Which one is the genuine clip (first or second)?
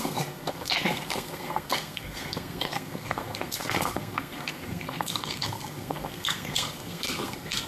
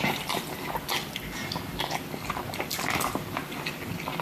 second